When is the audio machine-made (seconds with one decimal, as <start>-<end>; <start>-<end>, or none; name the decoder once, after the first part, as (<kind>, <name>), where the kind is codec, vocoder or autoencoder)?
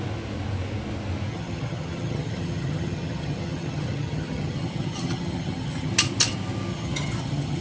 1.3-5.9 (vocoder, HiFi-GAN); 6.7-7.6